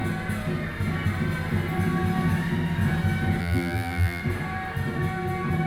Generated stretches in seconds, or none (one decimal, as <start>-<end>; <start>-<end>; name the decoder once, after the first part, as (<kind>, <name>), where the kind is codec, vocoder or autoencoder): 3.4-4.2 (vocoder, BigVGAN v2)